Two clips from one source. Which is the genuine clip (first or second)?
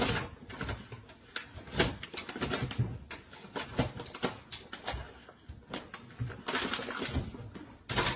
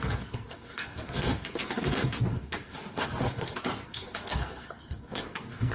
first